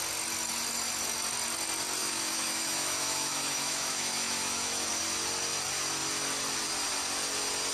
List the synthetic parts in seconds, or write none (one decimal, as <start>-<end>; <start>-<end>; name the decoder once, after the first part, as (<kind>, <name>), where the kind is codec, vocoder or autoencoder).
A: 2.0-4.9 (autoencoder, DAC-VAE)